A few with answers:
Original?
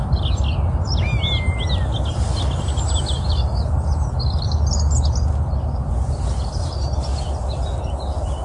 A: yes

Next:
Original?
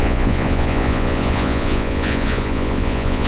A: no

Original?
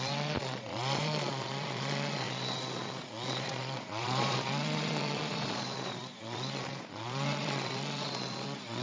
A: no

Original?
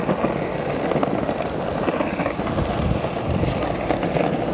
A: yes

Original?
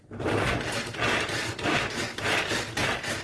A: yes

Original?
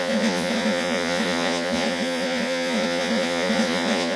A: no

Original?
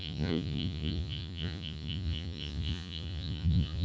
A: no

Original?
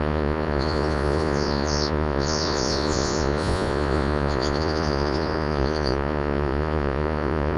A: no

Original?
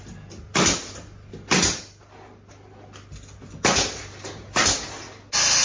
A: yes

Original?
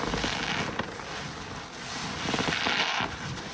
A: yes